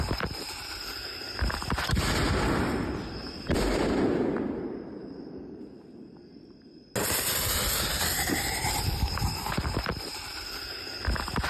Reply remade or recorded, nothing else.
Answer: recorded